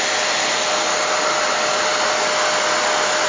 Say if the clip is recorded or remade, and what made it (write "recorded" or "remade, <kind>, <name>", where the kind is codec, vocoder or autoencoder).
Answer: recorded